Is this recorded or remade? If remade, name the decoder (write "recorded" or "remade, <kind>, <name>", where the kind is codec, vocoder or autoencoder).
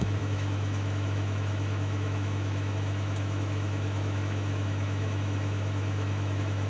remade, autoencoder, DAC-VAE